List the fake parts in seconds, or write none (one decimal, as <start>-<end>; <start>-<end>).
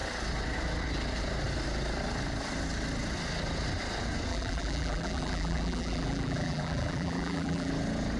4.3-7.7